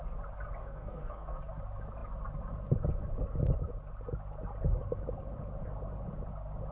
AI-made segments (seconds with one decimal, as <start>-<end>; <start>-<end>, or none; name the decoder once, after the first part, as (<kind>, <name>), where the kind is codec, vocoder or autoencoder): 0.6-1.4 (codec, SNAC)